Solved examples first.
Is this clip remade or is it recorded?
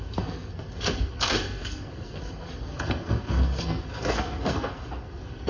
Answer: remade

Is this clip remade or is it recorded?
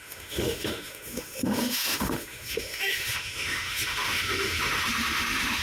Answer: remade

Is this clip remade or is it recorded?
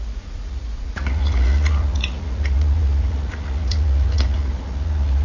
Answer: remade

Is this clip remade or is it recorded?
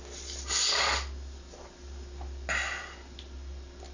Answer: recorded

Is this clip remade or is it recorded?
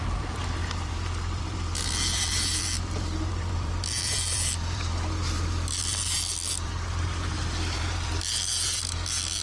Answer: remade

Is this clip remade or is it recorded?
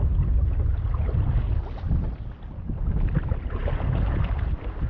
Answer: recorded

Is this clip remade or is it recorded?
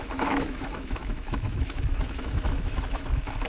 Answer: remade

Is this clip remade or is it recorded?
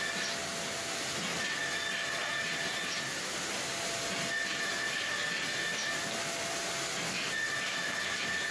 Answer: recorded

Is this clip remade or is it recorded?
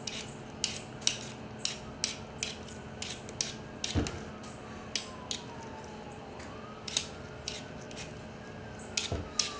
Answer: recorded